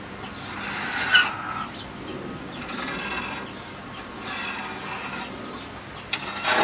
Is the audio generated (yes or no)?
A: no